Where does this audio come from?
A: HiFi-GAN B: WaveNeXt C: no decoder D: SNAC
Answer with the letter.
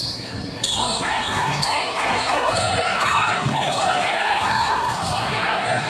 D